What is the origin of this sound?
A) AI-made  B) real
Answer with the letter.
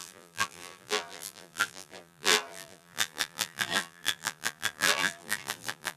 A